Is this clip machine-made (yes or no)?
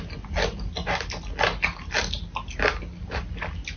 no